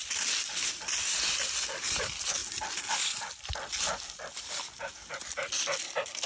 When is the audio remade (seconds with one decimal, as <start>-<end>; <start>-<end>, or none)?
none